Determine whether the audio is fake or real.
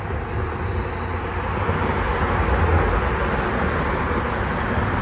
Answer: real